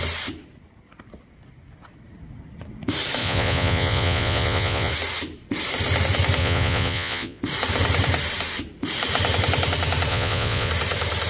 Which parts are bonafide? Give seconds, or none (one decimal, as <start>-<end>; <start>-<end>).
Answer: 0.0-3.2; 4.9-6.4; 7.4-10.1; 10.7-11.3